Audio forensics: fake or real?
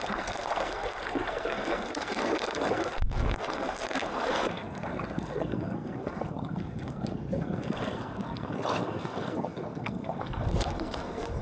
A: fake